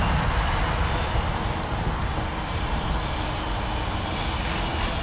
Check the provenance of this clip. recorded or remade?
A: recorded